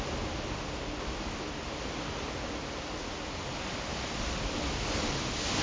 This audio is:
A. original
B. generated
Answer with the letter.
A